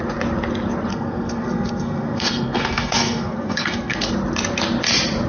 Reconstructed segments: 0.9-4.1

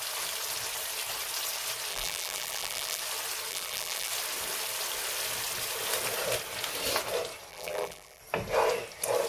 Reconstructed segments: 1.9-3.0; 3.5-4.1; 7.5-8.2

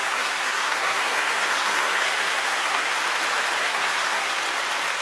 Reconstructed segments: 0.0-3.0; 3.6-4.4

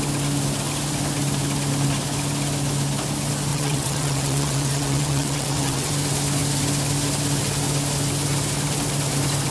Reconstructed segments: 3.5-5.9

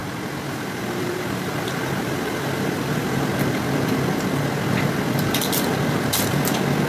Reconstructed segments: 0.0-3.3

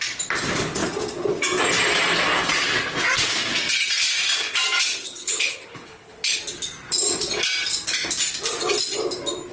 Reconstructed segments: 5.0-6.4

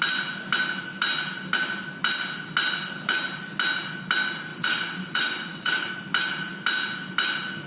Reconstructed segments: 4.5-5.9